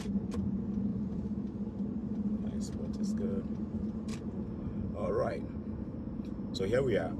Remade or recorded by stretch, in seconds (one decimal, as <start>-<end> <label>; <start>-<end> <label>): 0.0-0.9 recorded; 0.9-1.5 remade; 1.5-2.0 recorded; 2.0-3.6 remade; 3.6-7.2 recorded